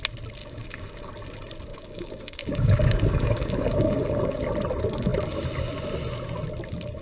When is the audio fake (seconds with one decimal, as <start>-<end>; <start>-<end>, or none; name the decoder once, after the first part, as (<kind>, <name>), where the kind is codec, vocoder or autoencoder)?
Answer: 0.4-1.1 (codec, DAC); 1.7-4.4